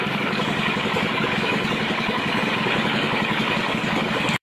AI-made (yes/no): yes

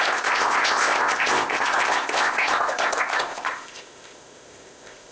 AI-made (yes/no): yes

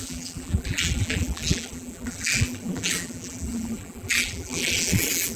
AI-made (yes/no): yes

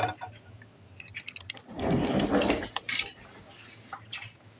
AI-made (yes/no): no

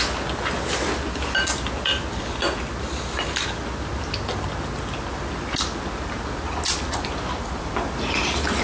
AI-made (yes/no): no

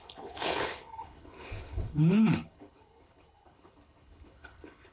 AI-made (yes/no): yes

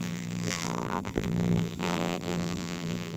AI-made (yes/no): yes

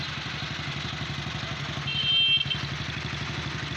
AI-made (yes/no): no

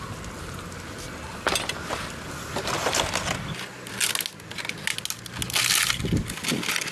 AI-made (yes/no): no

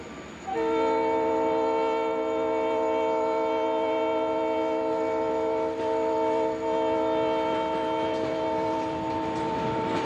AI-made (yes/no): no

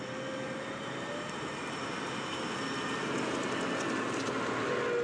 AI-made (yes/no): no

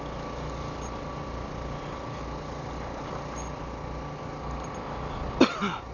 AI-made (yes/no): no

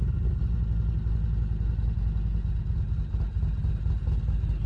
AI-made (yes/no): no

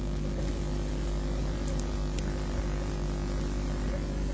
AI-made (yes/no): no